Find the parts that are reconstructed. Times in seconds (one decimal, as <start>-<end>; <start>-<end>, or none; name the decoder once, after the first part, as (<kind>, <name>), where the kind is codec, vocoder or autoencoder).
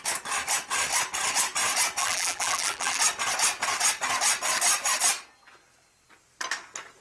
2.0-3.0 (vocoder, BigVGAN v2)